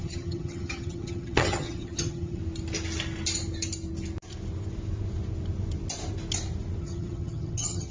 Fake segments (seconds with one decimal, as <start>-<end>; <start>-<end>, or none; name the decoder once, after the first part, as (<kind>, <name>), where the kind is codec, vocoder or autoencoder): 0.0-2.4 (vocoder, HiFi-GAN); 6.8-7.9